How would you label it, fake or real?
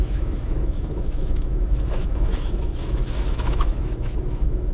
fake